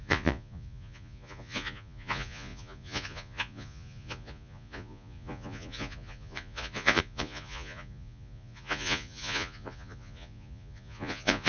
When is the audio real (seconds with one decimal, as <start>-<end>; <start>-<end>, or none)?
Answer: none

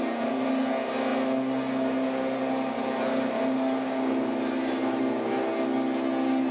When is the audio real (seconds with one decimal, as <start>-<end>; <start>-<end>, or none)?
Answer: 0.0-6.5

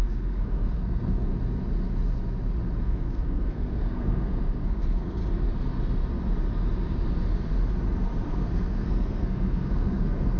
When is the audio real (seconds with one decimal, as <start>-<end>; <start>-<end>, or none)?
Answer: 1.3-2.8; 5.2-8.3

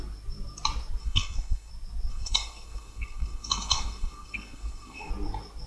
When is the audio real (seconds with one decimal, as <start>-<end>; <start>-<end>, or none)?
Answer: 0.0-1.0; 1.7-2.1; 5.1-5.7

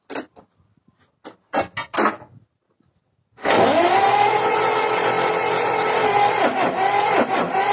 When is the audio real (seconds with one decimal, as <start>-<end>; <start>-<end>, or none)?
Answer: 0.0-7.7

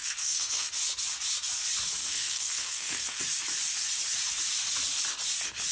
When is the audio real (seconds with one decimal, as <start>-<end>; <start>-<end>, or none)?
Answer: 0.7-2.0; 3.2-5.7